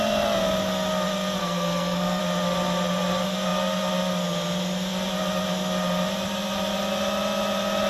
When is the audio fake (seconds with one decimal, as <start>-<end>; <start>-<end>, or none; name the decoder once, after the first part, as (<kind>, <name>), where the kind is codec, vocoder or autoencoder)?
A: 1.4-2.2 (codec, SNAC)